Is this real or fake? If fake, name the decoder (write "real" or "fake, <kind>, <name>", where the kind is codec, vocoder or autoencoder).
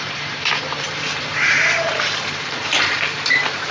fake, vocoder, BigVGAN v2